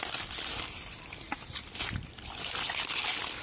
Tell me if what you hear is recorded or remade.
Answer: recorded